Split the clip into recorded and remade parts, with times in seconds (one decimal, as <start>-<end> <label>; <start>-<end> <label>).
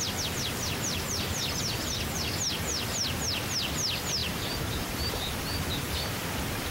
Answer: 0.0-4.2 recorded; 4.2-5.3 remade; 5.3-6.7 recorded